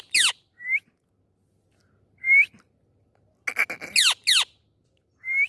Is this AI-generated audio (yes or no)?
no